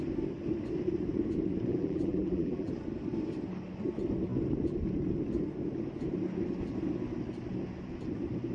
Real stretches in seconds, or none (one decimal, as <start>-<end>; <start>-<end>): 0.0-1.7; 2.7-8.5